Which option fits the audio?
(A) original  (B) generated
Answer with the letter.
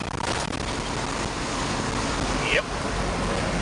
A